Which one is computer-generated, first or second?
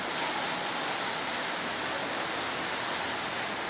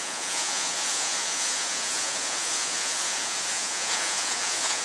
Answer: second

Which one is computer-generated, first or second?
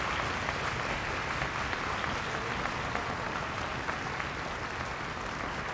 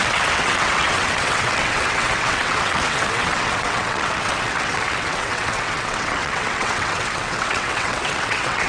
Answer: second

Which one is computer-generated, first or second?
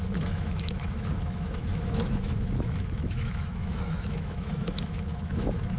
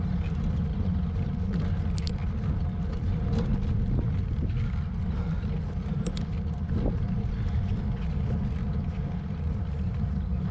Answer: first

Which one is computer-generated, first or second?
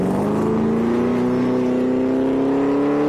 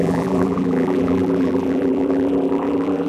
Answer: second